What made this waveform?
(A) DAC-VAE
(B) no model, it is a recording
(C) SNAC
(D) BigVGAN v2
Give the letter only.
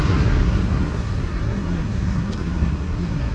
C